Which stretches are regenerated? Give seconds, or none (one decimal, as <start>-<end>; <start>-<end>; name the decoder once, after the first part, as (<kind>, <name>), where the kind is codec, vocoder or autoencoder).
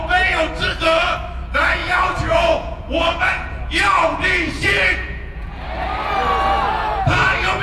1.8-5.5 (vocoder, Vocos)